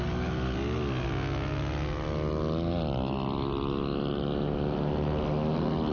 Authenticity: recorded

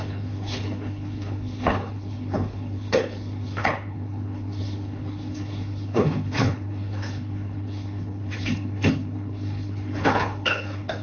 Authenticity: remade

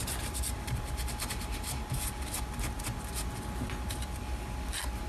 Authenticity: recorded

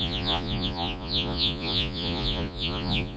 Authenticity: remade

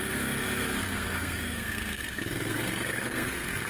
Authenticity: remade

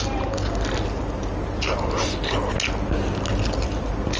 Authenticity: recorded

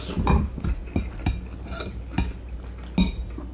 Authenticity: recorded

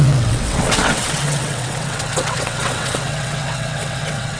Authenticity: remade